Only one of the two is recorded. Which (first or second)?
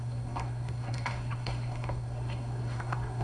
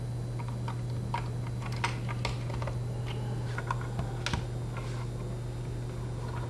second